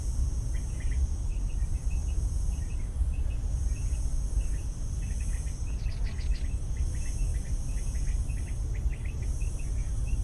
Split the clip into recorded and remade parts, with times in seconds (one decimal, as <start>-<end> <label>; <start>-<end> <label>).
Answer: 0.0-1.3 recorded; 1.3-1.9 remade; 1.9-2.7 recorded; 2.7-3.2 remade; 3.2-10.2 recorded